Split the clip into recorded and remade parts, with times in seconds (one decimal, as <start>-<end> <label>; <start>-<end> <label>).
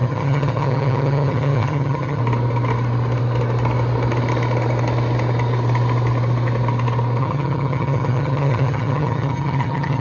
0.0-2.2 remade; 2.2-7.2 recorded; 7.2-10.0 remade